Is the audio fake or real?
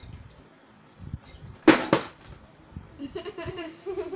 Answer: fake